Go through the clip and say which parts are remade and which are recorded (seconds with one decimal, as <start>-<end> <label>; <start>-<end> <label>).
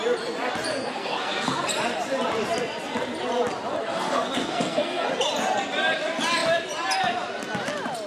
0.0-0.7 recorded; 0.7-1.7 remade; 1.7-3.8 recorded; 3.8-5.1 remade; 5.1-8.1 recorded